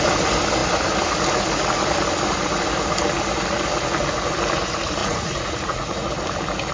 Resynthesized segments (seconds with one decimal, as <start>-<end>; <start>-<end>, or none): 5.0-6.1